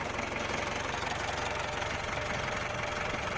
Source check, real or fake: real